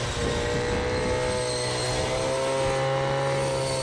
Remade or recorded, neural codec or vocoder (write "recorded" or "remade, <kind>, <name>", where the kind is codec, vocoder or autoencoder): recorded